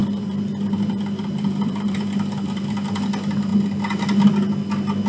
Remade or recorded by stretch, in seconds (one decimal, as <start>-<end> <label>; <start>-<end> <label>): 0.0-3.1 remade; 3.1-5.1 recorded